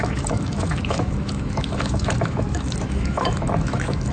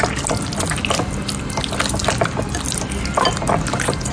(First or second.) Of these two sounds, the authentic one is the second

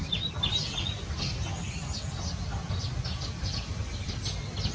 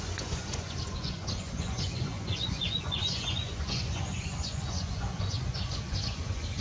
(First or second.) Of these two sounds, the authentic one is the first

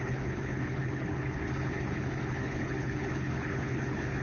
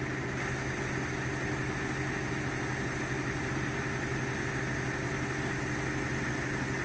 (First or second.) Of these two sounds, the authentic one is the second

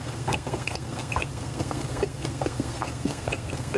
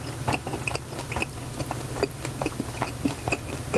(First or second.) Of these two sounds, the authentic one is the second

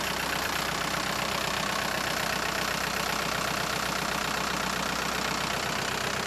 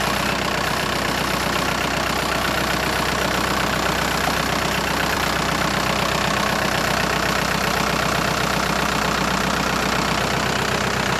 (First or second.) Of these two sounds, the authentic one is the first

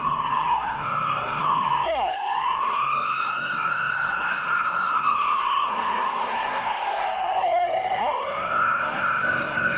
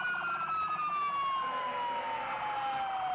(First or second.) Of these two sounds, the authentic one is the second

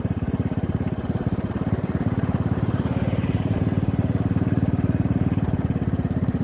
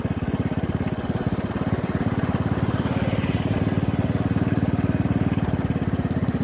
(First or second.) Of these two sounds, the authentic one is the second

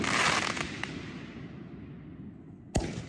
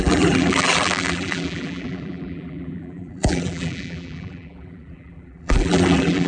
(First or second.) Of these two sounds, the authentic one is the first